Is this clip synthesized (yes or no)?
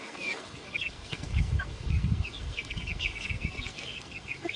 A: yes